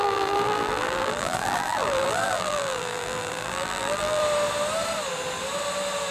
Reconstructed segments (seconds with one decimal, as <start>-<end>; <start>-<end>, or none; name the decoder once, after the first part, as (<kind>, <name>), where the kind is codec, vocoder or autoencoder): 0.0-4.2 (vocoder, BigVGAN v2)

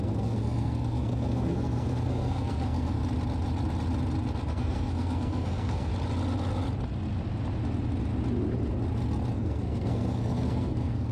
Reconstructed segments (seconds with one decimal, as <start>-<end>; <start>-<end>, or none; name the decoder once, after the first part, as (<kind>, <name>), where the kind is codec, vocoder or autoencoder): 0.0-3.0 (codec, SNAC); 4.5-5.9; 9.3-11.1

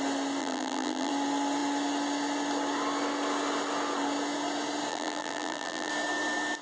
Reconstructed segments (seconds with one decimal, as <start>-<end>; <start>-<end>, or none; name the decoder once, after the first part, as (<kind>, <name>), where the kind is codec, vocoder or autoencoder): 0.4-1.1 (vocoder, BigVGAN v2); 4.9-5.9

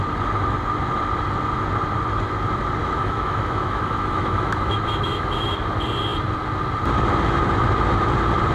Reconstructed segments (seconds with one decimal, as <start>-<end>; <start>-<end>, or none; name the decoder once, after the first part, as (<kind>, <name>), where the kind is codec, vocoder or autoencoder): 2.8-5.5 (autoencoder, DAC-VAE)

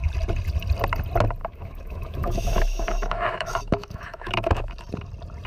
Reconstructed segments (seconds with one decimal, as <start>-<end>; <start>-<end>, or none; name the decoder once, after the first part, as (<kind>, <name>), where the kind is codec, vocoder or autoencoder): 1.4-4.7 (autoencoder, DAC-VAE)

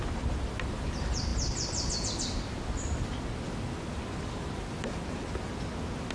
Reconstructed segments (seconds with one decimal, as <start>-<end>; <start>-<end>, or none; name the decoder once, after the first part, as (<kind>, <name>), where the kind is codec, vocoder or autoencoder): none

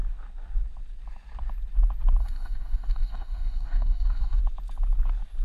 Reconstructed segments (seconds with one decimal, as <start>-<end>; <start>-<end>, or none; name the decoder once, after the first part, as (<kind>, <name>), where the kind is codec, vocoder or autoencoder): 2.2-4.4 (codec, DAC)